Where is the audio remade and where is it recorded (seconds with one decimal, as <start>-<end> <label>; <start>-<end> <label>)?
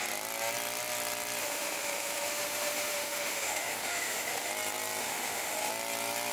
0.0-1.4 recorded; 1.4-4.5 remade; 4.5-5.0 recorded; 5.0-5.7 remade; 5.7-6.3 recorded